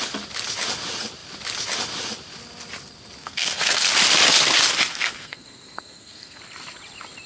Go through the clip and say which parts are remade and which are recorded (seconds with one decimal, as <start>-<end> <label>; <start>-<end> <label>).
0.0-3.2 recorded; 3.2-3.9 remade; 3.9-4.9 recorded; 4.9-6.4 remade; 6.4-7.3 recorded